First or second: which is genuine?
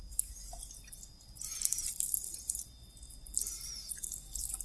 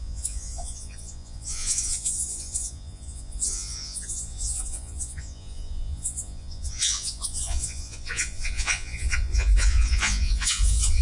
first